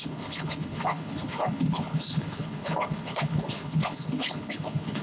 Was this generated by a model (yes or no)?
yes